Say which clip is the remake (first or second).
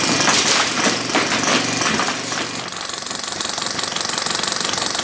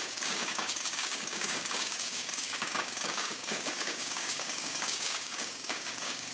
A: second